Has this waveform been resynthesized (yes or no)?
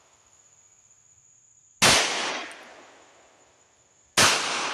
no